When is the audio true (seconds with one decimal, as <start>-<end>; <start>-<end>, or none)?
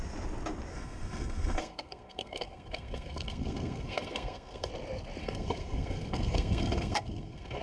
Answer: 0.0-0.7; 4.7-5.2